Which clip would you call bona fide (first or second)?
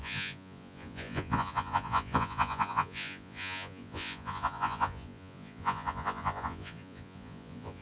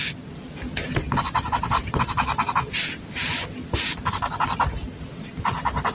second